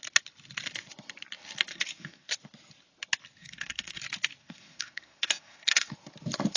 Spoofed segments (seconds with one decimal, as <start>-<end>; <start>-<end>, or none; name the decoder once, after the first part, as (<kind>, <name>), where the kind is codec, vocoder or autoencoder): 1.7-2.3 (codec, SNAC); 3.4-4.0; 4.4-5.9